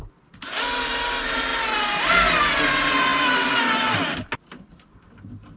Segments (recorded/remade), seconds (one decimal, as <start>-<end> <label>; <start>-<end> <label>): 0.0-5.6 recorded